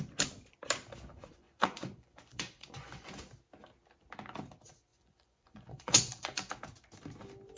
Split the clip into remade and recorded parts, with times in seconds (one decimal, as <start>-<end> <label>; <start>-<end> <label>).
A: 0.0-1.1 recorded; 1.1-3.2 remade; 3.2-4.9 recorded; 4.9-6.5 remade; 6.5-7.6 recorded